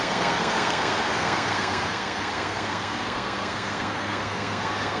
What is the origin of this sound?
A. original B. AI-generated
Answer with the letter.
B